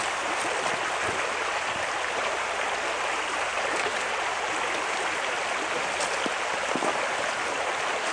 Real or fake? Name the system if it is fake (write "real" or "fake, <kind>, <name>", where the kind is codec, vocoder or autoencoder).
real